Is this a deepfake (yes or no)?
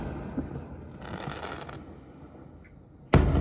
no